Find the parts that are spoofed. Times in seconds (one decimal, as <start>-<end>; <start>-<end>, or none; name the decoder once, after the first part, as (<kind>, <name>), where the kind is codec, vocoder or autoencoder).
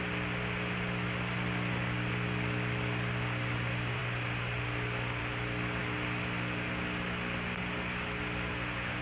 none